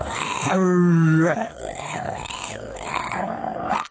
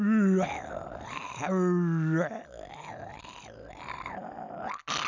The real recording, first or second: second